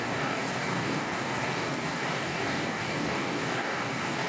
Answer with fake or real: fake